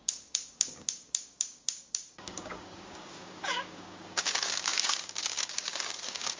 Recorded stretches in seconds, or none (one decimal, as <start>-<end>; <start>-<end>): none